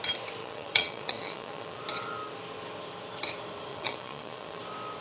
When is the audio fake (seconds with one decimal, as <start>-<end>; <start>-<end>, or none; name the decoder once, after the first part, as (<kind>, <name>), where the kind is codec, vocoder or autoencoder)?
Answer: 0.4-1.8 (vocoder, Vocos); 3.7-4.6